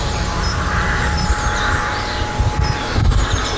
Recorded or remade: recorded